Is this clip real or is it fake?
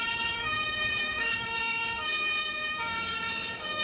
fake